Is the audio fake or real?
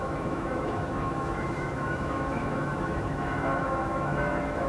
fake